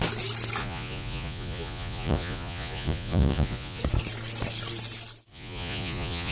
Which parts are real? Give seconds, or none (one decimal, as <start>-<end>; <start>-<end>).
0.0-0.6; 3.8-5.3